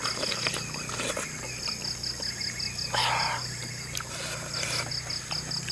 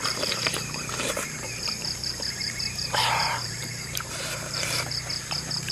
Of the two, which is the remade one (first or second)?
second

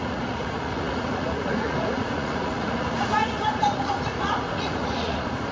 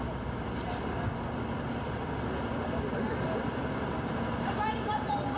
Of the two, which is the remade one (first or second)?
first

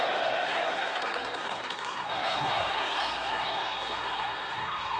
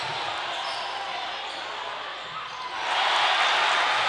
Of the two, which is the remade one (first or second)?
first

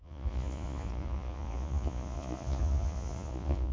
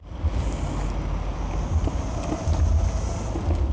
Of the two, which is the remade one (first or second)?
first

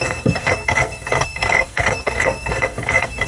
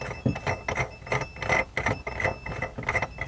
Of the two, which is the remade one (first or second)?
first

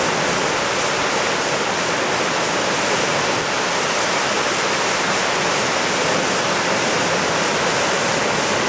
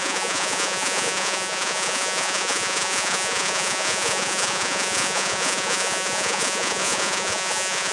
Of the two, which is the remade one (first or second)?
second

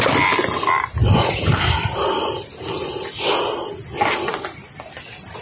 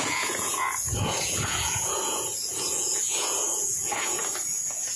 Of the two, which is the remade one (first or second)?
second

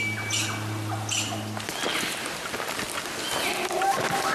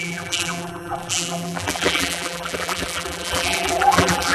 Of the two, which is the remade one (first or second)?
second